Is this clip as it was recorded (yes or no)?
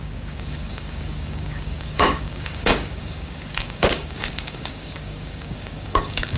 no